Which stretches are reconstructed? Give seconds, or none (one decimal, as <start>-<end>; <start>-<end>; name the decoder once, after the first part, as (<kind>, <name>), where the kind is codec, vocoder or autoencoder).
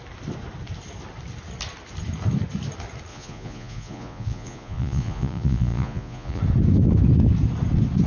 3.1-6.4 (vocoder, Vocos)